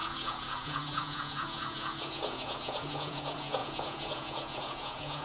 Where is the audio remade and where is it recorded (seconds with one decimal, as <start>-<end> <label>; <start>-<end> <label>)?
0.0-5.2 remade